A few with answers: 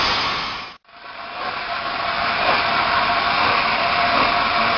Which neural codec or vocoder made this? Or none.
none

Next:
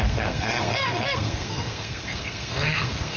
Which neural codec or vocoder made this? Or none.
codec, SNAC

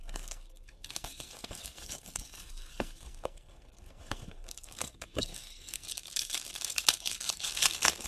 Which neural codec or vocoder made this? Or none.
codec, SNAC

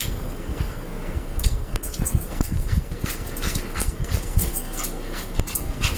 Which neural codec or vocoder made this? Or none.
codec, SNAC